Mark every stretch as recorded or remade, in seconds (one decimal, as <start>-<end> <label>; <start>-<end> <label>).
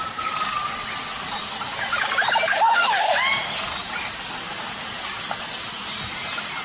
0.0-2.5 recorded; 2.5-3.1 remade; 3.1-6.6 recorded